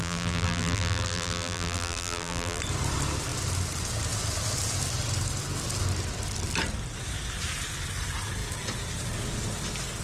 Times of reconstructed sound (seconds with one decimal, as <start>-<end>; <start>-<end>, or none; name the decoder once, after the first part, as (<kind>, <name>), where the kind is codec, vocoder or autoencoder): 0.0-2.6 (vocoder, BigVGAN v2)